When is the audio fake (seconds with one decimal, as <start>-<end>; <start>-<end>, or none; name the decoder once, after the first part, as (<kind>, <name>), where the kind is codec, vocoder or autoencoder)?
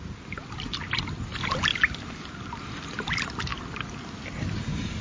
none